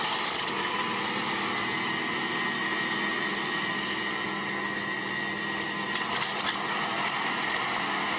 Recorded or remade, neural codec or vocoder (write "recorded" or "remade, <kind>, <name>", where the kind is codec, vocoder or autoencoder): recorded